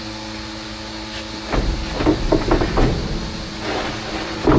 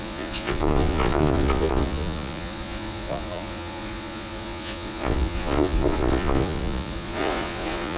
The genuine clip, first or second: first